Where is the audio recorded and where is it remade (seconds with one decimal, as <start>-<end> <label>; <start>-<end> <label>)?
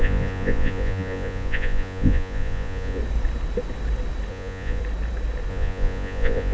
0.0-3.0 remade; 3.0-4.3 recorded; 4.3-4.8 remade; 4.8-5.5 recorded; 5.5-6.5 remade